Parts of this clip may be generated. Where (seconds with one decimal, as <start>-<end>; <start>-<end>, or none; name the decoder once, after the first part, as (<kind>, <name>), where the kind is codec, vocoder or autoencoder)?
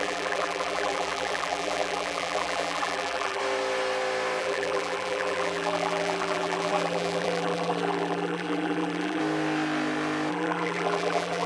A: 0.0-3.4 (vocoder, BigVGAN v2); 4.4-9.2; 10.3-11.5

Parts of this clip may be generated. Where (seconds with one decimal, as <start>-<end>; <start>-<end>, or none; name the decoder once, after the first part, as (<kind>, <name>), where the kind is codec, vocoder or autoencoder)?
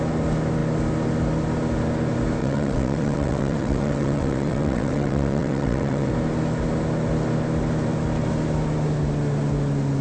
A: 2.4-6.1 (vocoder, WaveNeXt)